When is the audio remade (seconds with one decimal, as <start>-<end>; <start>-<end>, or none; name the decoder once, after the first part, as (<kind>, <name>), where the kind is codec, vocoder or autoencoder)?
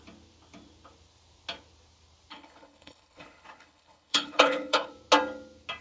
2.3-4.9 (codec, HILCodec)